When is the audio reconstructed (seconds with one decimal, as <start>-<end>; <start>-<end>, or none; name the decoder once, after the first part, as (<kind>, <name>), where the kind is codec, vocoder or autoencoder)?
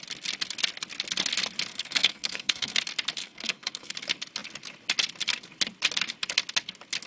1.7-2.8 (codec, SNAC); 3.2-3.9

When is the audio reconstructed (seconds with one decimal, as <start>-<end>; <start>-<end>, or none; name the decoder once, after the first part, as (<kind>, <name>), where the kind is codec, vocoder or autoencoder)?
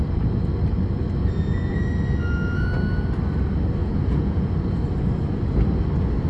3.8-4.4 (vocoder, Vocos)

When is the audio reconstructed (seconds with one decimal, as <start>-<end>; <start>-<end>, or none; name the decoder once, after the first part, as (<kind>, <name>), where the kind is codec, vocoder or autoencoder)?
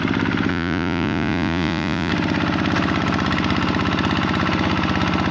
0.5-2.1 (vocoder, Vocos)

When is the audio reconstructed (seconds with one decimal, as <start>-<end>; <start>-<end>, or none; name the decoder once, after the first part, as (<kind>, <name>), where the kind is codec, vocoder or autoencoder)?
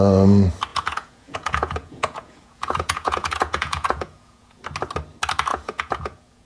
0.7-4.6 (vocoder, Vocos); 5.5-6.5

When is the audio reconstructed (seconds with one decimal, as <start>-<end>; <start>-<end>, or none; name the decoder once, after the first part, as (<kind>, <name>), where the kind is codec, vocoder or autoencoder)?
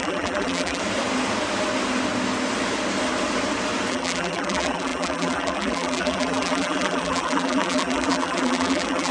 0.0-0.8 (vocoder, BigVGAN v2); 3.9-9.1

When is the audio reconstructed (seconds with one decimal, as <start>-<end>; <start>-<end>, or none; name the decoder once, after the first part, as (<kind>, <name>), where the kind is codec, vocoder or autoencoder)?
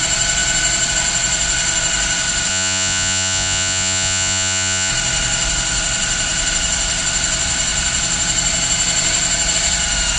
2.5-4.9 (vocoder, Vocos)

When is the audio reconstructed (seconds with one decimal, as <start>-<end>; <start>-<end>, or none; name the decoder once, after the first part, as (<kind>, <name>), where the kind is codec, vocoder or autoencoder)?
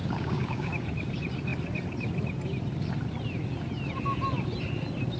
0.0-0.7 (codec, DAC)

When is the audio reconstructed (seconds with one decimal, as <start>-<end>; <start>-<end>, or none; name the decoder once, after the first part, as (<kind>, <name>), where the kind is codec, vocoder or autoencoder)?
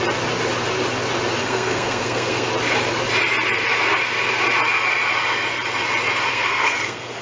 1.4-2.5 (codec, SNAC); 6.3-7.2